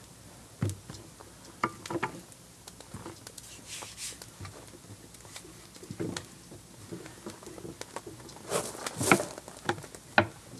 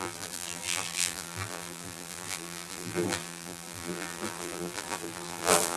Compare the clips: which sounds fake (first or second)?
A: second